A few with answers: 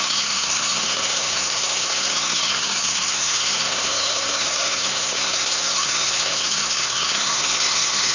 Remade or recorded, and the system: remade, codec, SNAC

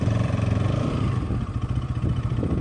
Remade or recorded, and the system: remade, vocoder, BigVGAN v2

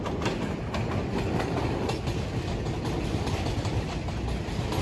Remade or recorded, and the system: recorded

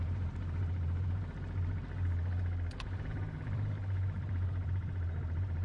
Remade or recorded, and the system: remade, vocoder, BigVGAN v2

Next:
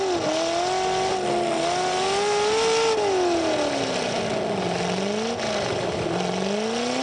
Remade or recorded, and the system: recorded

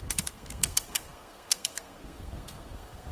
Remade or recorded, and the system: remade, codec, SNAC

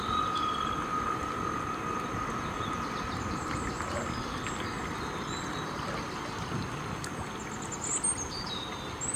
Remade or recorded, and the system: recorded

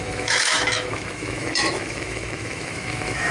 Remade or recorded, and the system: remade, autoencoder, DAC-VAE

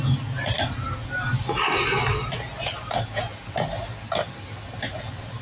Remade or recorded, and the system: recorded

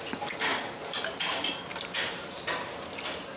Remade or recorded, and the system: recorded